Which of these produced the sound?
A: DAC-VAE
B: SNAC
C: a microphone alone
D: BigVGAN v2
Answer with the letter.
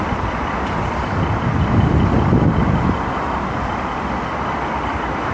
C